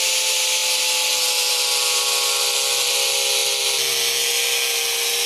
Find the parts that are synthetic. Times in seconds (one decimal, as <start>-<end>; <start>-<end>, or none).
none